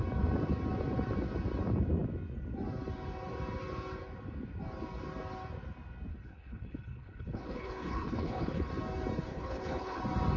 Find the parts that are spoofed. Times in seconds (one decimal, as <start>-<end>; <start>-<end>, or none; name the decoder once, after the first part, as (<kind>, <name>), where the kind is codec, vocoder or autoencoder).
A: 6.1-8.7 (codec, HILCodec); 9.3-10.0